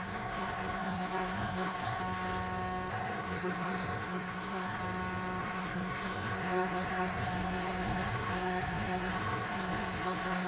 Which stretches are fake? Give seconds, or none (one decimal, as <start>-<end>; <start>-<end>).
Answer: 0.0-2.0; 2.9-4.8; 5.4-10.5